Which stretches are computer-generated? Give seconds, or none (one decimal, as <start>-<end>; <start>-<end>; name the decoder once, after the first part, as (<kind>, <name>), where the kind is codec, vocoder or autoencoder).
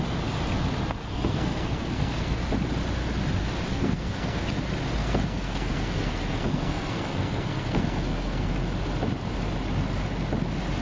1.0-2.4 (codec, SNAC); 3.7-4.4; 5.0-8.5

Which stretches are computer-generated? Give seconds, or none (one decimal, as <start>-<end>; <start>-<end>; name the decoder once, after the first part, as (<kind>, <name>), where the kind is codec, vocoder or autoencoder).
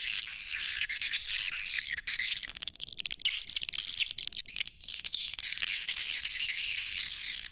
0.0-1.2 (codec, SNAC); 1.7-2.9; 4.5-7.5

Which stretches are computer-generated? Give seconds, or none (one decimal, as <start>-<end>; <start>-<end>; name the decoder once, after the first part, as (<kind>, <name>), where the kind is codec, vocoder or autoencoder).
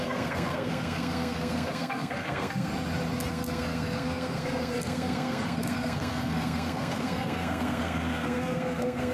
0.0-2.7 (codec, SNAC); 3.3-9.1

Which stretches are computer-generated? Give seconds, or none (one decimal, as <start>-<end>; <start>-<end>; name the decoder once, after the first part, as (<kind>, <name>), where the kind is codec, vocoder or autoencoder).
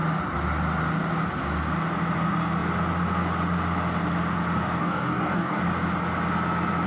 4.8-5.6 (codec, DAC)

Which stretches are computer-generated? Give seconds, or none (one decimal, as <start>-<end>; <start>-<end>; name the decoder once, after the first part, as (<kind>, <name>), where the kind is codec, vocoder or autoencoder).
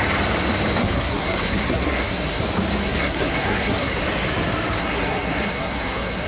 0.8-2.4 (codec, SNAC); 2.8-4.0; 4.8-6.3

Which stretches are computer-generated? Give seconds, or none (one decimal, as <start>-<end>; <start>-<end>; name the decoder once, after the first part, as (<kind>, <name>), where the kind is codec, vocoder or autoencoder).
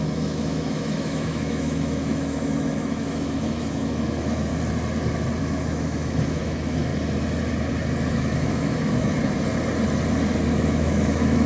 0.0-4.5 (autoencoder, DAC-VAE); 5.4-6.9; 8.1-9.1; 10.5-11.5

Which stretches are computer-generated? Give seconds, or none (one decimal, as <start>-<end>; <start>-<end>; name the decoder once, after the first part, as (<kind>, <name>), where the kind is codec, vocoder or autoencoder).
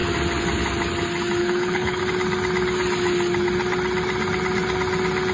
1.4-2.0 (codec, HILCodec)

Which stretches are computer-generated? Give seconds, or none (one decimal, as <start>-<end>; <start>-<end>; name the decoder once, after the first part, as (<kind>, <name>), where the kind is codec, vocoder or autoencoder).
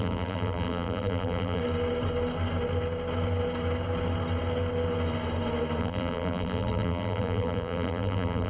0.0-1.6 (vocoder, BigVGAN v2); 5.8-8.5